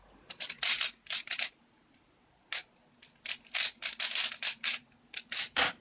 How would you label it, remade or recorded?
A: recorded